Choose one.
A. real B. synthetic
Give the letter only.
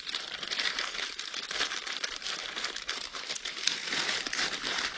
B